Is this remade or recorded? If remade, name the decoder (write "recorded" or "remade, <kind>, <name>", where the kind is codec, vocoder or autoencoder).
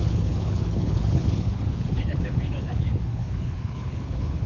remade, codec, HILCodec